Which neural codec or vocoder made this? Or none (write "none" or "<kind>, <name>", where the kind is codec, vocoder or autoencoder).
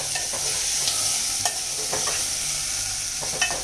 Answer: none